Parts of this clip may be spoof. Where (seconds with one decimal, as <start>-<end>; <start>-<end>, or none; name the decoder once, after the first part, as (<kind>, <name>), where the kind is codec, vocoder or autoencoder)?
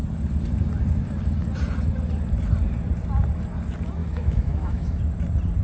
4.0-5.0 (autoencoder, DAC-VAE)